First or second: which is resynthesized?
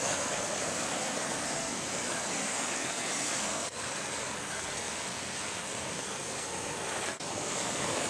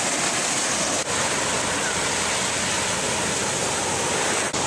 first